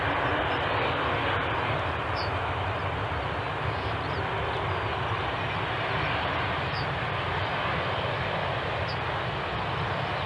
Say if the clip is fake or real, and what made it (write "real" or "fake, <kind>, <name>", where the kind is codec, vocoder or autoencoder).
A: real